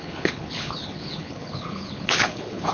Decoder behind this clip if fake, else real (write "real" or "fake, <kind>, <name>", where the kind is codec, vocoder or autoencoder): fake, codec, HILCodec